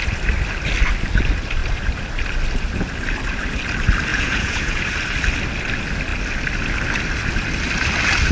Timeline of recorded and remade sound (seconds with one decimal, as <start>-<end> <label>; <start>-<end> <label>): 0.0-4.1 recorded; 4.1-4.8 remade; 4.8-8.3 recorded

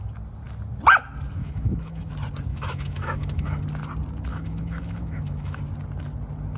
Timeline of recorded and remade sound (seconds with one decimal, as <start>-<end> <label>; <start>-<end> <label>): 0.0-1.4 recorded; 1.4-2.1 remade; 2.1-2.5 recorded; 2.5-3.6 remade; 3.6-4.3 recorded; 4.3-5.6 remade; 5.6-6.6 recorded

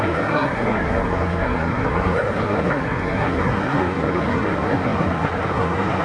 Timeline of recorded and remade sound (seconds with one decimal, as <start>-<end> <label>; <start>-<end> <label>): 0.0-6.0 remade

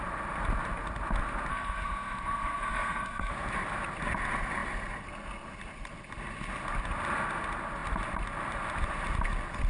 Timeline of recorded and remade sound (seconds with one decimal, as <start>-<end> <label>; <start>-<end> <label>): 0.0-1.5 recorded; 1.5-3.3 remade; 3.3-9.7 recorded

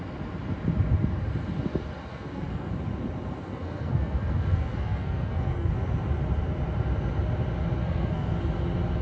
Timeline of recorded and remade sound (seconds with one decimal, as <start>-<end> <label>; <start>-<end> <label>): 0.0-2.1 recorded; 2.1-2.7 remade; 2.7-3.5 recorded; 3.5-5.7 remade; 5.7-7.8 recorded; 7.8-8.4 remade; 8.4-9.0 recorded

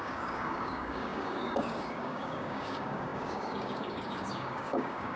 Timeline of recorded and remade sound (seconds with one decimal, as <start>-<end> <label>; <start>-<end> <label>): 0.0-5.2 remade

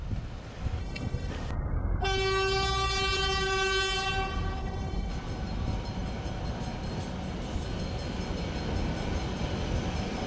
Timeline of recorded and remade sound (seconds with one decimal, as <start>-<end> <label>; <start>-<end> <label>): 0.0-0.8 recorded; 0.8-1.3 remade; 1.3-4.6 recorded; 4.6-5.1 remade; 5.1-10.3 recorded

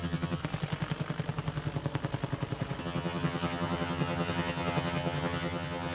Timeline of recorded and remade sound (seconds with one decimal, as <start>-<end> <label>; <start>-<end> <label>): 0.0-0.4 remade; 0.4-2.8 recorded; 2.8-5.9 remade